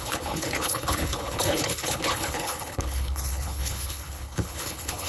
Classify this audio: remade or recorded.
remade